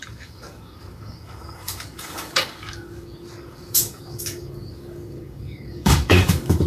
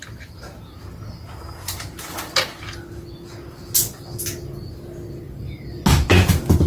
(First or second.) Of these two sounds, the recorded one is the second